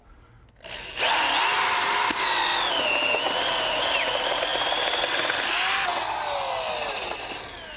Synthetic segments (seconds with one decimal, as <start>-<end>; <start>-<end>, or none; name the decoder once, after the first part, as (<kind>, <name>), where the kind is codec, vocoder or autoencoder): none